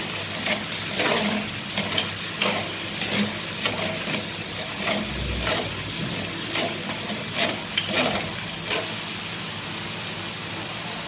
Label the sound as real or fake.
real